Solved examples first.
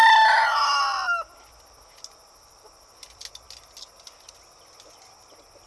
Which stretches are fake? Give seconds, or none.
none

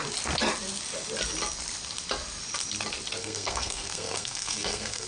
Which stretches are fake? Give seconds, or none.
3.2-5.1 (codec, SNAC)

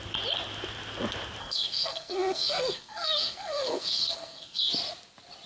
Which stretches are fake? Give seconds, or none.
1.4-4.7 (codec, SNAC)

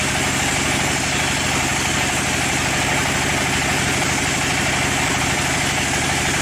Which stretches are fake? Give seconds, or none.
none

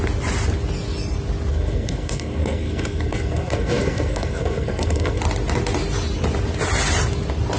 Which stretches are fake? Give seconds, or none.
1.5-5.2 (codec, SNAC)

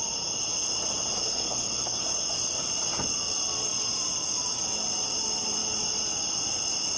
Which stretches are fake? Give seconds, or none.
1.2-2.0 (codec, SNAC)